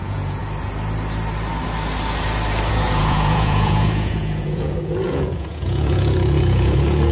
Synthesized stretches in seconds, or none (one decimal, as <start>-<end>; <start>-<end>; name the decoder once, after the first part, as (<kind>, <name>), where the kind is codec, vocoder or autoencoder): 0.0-0.4 (vocoder, Vocos); 2.7-7.1